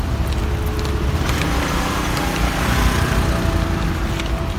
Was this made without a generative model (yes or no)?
yes